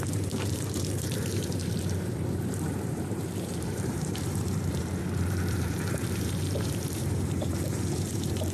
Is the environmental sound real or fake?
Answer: fake